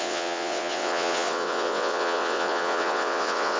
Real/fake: fake